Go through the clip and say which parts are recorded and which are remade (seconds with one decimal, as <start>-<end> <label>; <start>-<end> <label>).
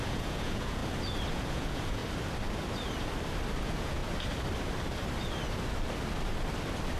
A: 0.0-0.8 remade; 0.8-1.3 recorded; 1.3-2.0 remade; 2.0-3.6 recorded; 3.6-4.0 remade; 4.0-7.0 recorded